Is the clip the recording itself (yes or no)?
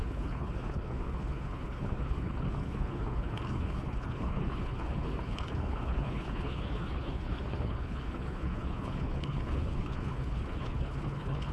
no